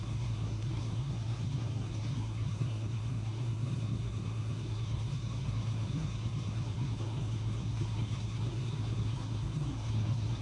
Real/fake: fake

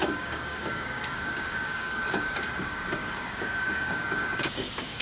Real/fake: fake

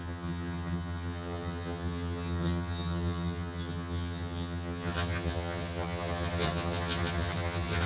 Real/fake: fake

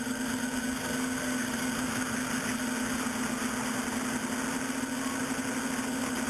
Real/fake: real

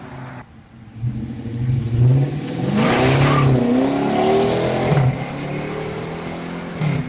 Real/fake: real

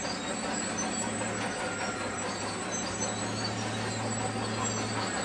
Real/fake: real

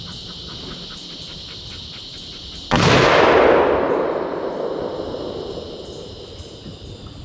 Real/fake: real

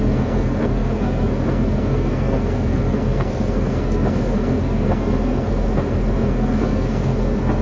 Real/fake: fake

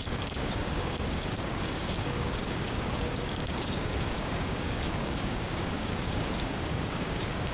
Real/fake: fake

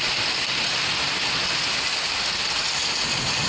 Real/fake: real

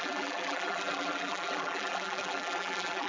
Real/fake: fake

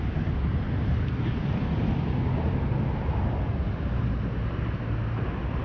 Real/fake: real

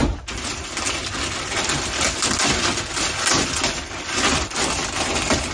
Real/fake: real